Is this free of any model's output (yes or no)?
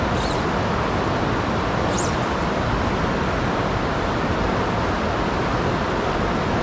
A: yes